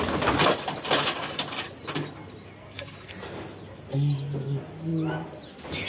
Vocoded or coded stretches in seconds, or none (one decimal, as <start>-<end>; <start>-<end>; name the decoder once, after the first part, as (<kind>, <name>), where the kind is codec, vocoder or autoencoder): 2.6-3.1 (codec, SNAC)